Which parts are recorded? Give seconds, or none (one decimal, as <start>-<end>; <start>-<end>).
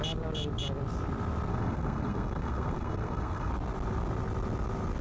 0.0-1.5; 3.5-5.0